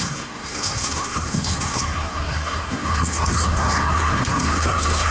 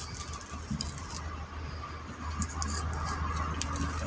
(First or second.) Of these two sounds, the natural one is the second